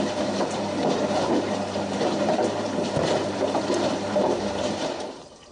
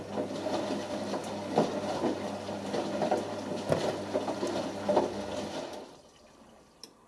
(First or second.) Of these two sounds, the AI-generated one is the first